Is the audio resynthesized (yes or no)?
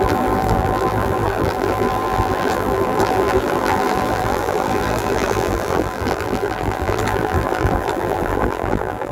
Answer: yes